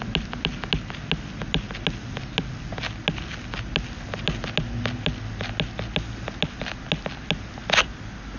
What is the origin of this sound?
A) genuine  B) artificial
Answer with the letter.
A